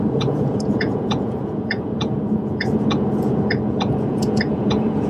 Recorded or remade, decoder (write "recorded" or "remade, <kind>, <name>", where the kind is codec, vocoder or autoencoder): remade, vocoder, Vocos